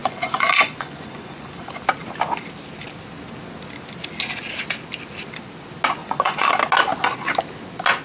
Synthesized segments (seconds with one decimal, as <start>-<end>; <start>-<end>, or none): 0.0-1.6; 6.0-6.5